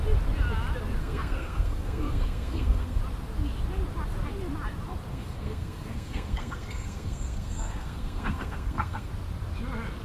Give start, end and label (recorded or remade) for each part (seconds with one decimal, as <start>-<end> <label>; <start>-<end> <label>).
0.0-1.0 recorded; 1.0-3.0 remade; 3.0-5.1 recorded; 5.1-9.1 remade; 9.1-10.0 recorded